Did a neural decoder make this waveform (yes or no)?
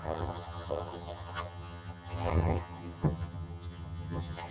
yes